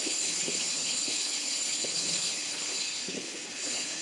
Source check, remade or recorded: remade